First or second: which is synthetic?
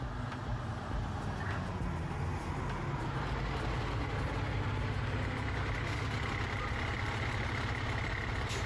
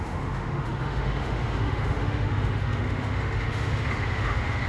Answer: second